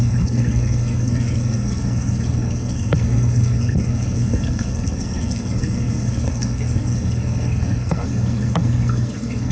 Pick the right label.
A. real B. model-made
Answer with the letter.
B